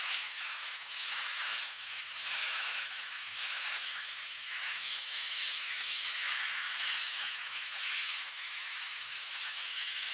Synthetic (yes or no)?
yes